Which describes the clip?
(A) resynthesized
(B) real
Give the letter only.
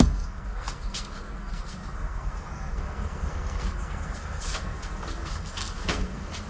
A